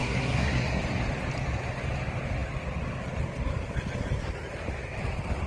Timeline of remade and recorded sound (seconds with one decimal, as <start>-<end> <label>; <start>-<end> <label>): 0.0-0.8 remade; 0.8-5.5 recorded